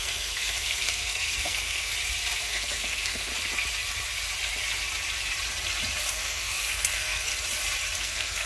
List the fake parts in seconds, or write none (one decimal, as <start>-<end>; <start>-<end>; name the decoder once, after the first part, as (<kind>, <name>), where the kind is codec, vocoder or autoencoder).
0.0-1.9 (codec, SNAC); 2.4-3.3; 6.1-7.3; 8.0-8.5